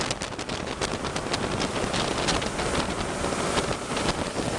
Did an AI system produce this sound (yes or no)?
no